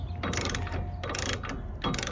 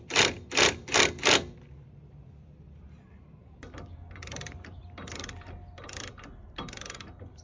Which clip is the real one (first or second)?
first